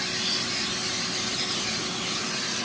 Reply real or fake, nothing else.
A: real